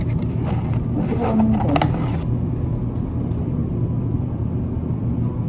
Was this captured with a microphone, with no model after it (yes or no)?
yes